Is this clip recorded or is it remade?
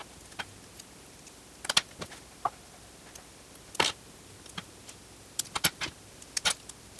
recorded